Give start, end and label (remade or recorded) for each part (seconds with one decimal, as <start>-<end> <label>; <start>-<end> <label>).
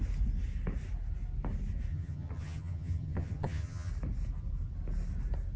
0.0-1.9 recorded; 1.9-3.9 remade; 3.9-5.6 recorded